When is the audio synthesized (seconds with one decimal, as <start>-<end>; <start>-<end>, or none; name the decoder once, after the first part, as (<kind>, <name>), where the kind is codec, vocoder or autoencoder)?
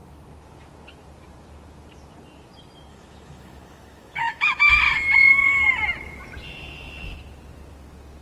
2.9-4.6 (autoencoder, DAC-VAE); 5.2-5.7